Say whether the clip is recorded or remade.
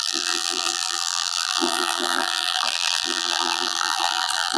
remade